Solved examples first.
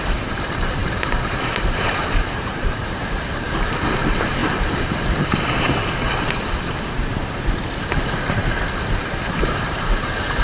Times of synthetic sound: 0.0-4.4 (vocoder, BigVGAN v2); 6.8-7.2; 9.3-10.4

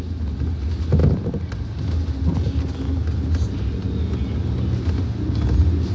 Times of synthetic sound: none

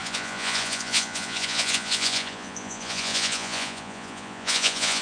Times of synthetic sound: 0.0-5.0 (vocoder, Vocos)

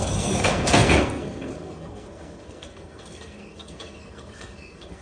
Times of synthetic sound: 0.0-5.0 (codec, SNAC)

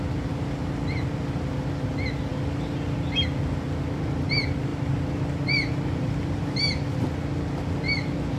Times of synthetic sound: none

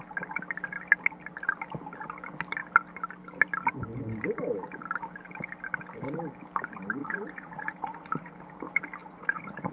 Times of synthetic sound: 7.0-8.3 (vocoder, Vocos); 9.0-9.7